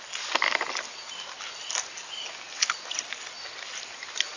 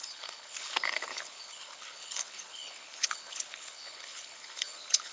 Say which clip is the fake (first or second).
second